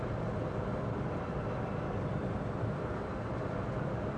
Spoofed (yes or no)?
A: yes